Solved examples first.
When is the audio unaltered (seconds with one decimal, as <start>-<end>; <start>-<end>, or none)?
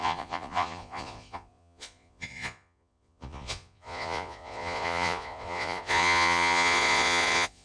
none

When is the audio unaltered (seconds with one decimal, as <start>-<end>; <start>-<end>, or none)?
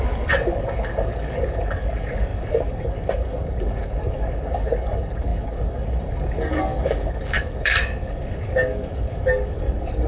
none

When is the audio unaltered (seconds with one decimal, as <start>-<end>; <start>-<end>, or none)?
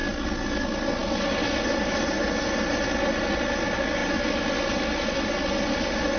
0.0-6.2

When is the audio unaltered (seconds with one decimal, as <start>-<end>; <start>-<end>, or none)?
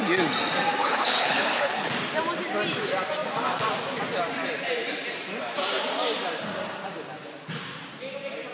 0.0-0.8; 1.9-8.5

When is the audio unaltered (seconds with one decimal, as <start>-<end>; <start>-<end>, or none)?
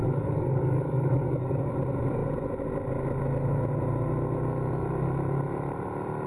1.7-6.3